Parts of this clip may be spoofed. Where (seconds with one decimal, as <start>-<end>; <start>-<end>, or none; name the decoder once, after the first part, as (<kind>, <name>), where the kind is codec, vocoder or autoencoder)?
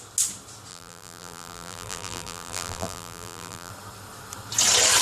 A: 0.7-3.7 (vocoder, BigVGAN v2)